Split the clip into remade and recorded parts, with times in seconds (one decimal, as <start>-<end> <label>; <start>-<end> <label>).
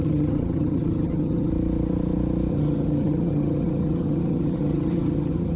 0.0-1.5 remade; 1.5-2.5 recorded; 2.5-5.6 remade